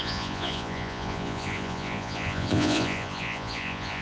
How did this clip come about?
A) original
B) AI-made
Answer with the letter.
B